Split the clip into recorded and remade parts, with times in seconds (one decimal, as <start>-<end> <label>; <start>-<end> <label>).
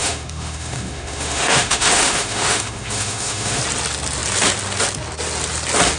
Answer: 0.0-3.6 remade; 3.6-6.0 recorded